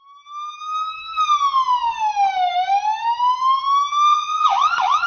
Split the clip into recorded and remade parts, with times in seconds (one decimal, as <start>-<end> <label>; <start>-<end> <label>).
0.0-4.1 recorded; 4.1-5.1 remade